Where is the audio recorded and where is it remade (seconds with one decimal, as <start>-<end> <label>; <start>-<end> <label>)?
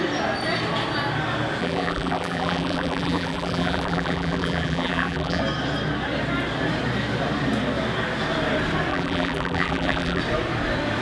0.0-1.6 recorded; 1.6-5.4 remade; 5.4-8.9 recorded; 8.9-10.2 remade; 10.2-11.0 recorded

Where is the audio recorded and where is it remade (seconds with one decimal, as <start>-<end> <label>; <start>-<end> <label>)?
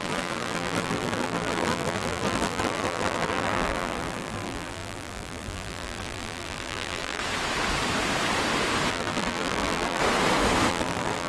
0.0-7.2 remade; 7.2-8.9 recorded; 8.9-10.0 remade; 10.0-10.7 recorded; 10.7-11.3 remade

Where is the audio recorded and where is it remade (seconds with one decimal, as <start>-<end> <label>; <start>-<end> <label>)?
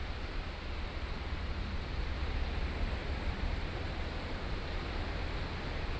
0.0-3.0 recorded; 3.0-5.2 remade; 5.2-6.0 recorded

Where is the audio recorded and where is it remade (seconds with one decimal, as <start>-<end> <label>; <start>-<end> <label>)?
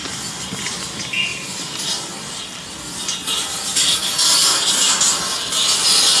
0.0-1.3 recorded; 1.3-1.8 remade; 1.8-3.2 recorded; 3.2-5.0 remade; 5.0-6.2 recorded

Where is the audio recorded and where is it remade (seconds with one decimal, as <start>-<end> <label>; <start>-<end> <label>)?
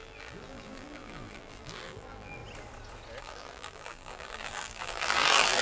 0.0-2.4 remade; 2.4-3.2 recorded; 3.2-5.6 remade